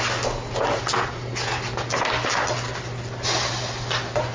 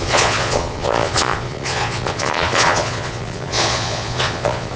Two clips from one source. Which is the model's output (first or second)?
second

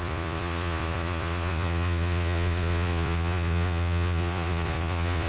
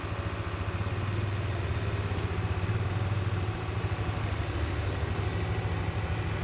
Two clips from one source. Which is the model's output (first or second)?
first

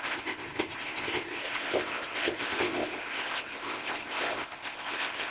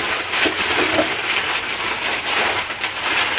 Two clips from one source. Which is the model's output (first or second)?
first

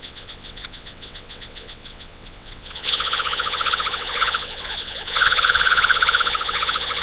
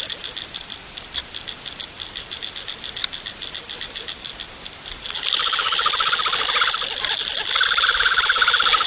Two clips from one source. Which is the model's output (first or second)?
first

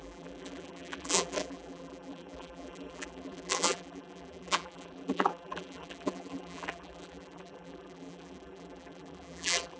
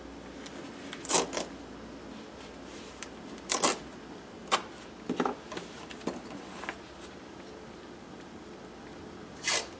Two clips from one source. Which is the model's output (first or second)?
first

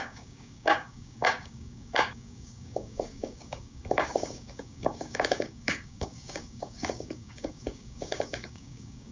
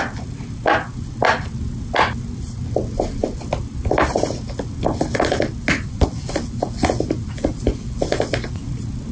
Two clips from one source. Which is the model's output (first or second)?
first